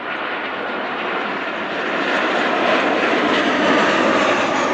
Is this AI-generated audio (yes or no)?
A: no